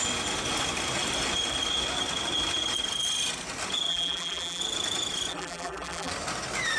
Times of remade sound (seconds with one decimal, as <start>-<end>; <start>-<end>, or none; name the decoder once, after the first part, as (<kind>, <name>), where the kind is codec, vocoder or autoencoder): 3.9-4.6 (vocoder, BigVGAN v2); 5.3-6.1